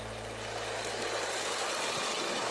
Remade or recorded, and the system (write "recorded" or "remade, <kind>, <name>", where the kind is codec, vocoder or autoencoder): recorded